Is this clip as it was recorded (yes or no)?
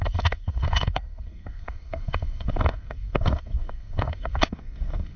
no